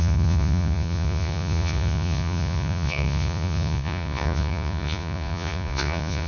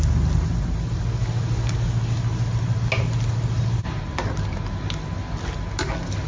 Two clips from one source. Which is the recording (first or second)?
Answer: second